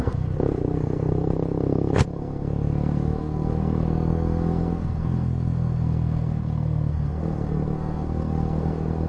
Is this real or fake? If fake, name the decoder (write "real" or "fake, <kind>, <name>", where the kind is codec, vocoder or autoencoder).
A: fake, codec, SNAC